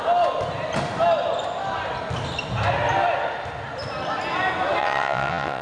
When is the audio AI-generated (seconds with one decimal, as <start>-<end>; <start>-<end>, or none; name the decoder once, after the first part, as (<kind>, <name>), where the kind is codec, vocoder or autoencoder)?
4.8-5.6 (vocoder, WaveNeXt)